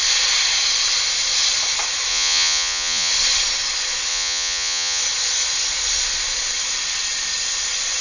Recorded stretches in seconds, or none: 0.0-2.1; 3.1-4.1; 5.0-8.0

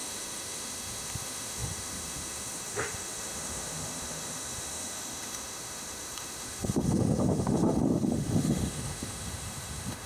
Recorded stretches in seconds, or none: none

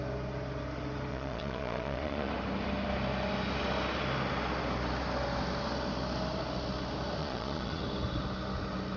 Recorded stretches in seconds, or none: 0.0-1.1; 2.3-7.2; 7.8-9.0

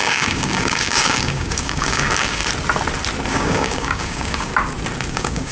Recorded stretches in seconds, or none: 2.4-3.3; 4.5-5.1

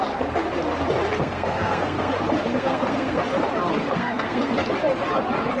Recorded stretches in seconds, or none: 0.0-1.2; 2.1-2.5; 3.2-3.9; 4.5-5.6